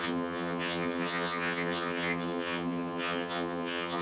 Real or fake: fake